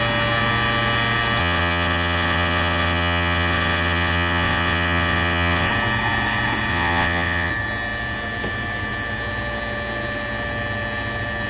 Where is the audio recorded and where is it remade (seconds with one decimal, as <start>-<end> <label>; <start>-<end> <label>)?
0.0-1.4 recorded; 1.4-5.7 remade; 5.7-6.7 recorded; 6.7-7.5 remade; 7.5-11.5 recorded